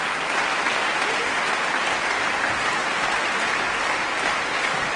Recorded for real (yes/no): yes